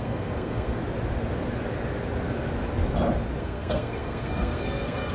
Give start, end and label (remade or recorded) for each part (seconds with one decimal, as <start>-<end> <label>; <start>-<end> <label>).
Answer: 0.0-0.8 remade; 0.8-3.4 recorded; 3.4-5.1 remade